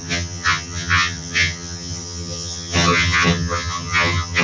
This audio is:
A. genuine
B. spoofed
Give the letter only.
B